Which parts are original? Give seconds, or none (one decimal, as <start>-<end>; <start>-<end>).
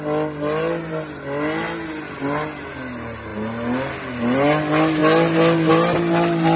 0.0-6.6